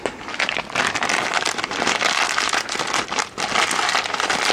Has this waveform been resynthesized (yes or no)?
yes